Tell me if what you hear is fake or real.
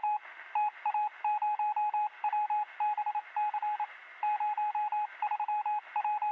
real